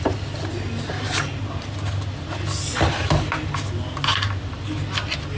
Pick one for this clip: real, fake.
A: real